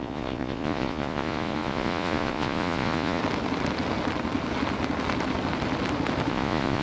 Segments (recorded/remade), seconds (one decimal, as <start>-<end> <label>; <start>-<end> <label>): 0.0-3.2 remade; 3.2-6.3 recorded; 6.3-6.8 remade